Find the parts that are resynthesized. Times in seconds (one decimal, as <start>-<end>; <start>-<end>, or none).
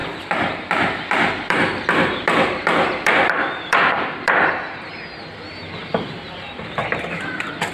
0.0-4.5; 5.8-7.7